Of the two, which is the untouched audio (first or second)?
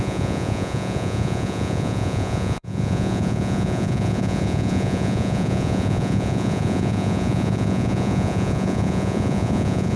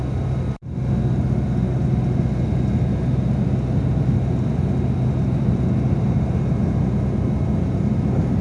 second